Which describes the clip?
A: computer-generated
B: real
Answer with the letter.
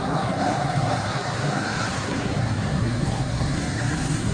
A